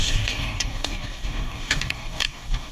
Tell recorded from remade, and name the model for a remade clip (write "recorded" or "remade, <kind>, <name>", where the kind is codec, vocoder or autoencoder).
remade, codec, DAC